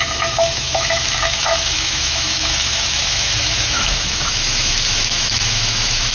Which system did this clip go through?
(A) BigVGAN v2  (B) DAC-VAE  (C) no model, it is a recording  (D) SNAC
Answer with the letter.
B